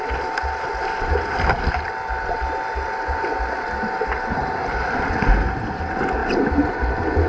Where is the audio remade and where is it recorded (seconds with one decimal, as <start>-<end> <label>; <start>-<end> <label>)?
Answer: 0.0-7.3 recorded